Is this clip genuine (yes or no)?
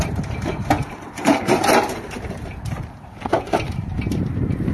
no